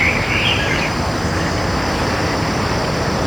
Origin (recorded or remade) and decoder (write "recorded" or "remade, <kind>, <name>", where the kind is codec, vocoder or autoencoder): remade, vocoder, BigVGAN v2